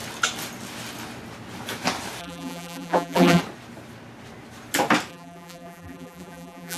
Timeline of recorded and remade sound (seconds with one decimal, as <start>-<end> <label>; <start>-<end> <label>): 0.0-2.2 recorded; 2.2-3.4 remade; 3.4-5.1 recorded; 5.1-6.8 remade